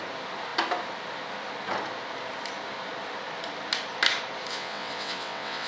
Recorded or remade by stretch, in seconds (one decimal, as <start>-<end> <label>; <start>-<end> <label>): 0.0-4.5 recorded; 4.5-5.7 remade

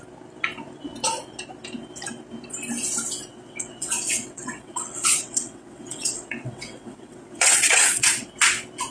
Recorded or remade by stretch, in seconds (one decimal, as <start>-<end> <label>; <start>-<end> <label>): 0.0-3.3 recorded; 3.3-8.3 remade; 8.3-8.9 recorded

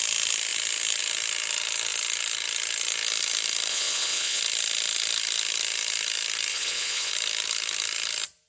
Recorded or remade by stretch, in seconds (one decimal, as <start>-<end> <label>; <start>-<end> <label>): 0.0-3.7 recorded; 3.7-4.4 remade; 4.4-6.5 recorded; 6.5-7.1 remade; 7.1-8.5 recorded

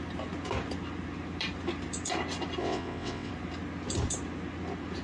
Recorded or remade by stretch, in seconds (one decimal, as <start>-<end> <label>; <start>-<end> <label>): 0.0-2.6 recorded; 2.6-3.3 remade; 3.3-5.0 recorded

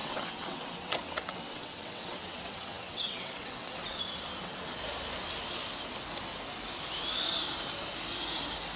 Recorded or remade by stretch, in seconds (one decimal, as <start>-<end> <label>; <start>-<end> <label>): 0.0-4.0 remade; 4.0-8.8 recorded

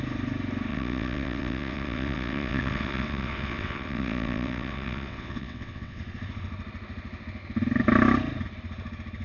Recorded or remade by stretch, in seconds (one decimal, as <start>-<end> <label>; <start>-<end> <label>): 0.0-0.7 recorded; 0.7-6.0 remade; 6.0-9.2 recorded